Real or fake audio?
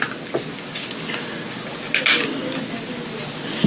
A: real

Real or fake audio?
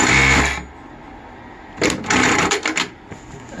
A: real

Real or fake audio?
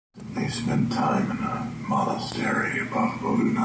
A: real